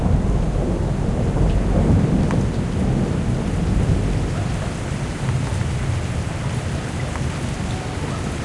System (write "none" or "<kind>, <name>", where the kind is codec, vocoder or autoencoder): none